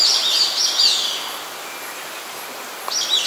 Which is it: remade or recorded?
recorded